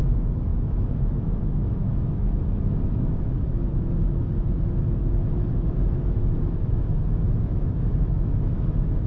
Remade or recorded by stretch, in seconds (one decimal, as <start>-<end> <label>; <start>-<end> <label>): 0.0-9.1 remade